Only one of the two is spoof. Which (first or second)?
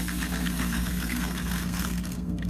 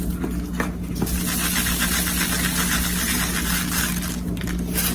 first